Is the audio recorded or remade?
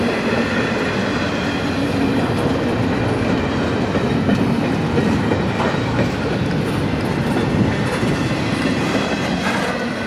recorded